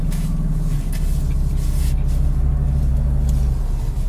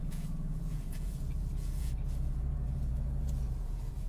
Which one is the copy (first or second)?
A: second